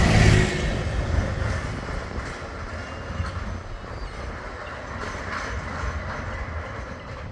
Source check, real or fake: real